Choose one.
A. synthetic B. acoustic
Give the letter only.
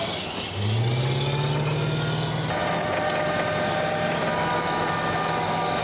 B